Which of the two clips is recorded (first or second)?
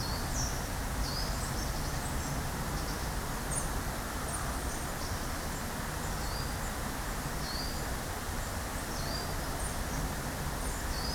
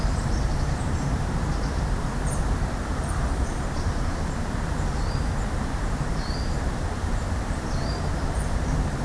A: first